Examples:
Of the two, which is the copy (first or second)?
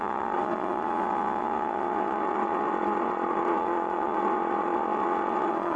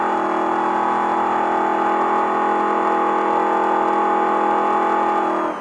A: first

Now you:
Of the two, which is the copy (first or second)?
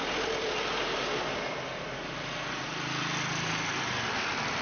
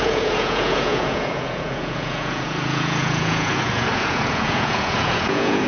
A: second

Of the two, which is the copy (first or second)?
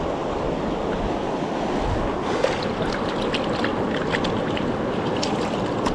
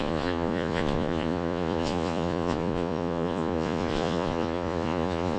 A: second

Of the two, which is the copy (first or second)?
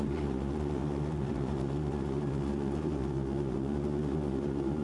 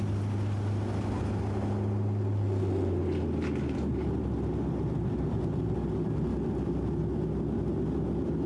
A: first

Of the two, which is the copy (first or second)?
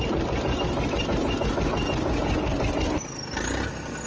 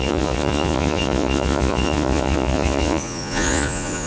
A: second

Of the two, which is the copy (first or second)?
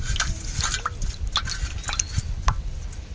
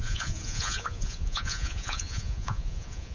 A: second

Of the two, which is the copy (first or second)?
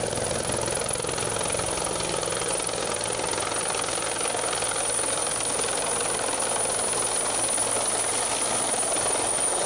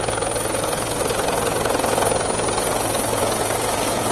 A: second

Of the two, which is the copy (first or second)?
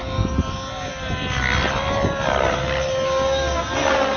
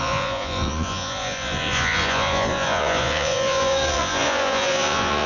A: second